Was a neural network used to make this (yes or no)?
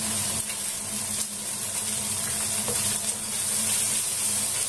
no